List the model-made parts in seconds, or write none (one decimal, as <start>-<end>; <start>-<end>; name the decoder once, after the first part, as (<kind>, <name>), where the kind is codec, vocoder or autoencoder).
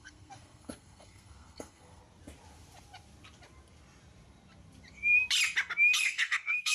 0.0-2.0 (codec, SNAC); 6.0-6.7